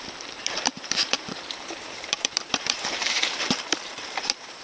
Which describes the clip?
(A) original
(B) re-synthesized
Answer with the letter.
B